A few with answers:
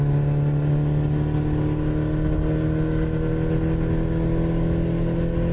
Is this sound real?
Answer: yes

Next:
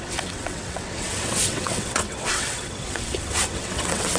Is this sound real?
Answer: no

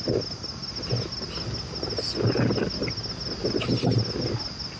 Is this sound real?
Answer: yes